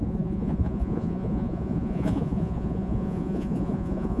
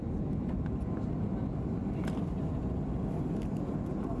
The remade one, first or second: first